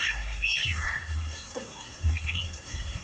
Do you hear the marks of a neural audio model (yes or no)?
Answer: yes